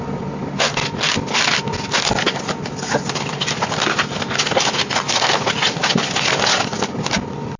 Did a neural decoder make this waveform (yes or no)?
no